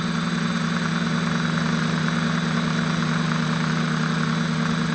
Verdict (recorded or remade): recorded